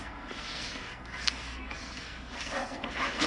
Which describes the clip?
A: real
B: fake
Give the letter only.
B